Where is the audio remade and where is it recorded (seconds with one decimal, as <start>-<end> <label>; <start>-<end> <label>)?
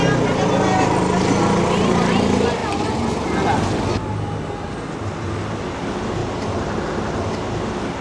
0.0-6.2 recorded; 6.2-6.9 remade; 6.9-8.0 recorded